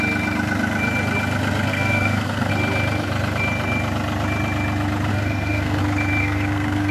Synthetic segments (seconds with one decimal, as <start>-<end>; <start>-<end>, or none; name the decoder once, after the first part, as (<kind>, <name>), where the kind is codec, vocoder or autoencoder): 1.7-2.5 (codec, SNAC); 5.1-5.8; 6.2-6.9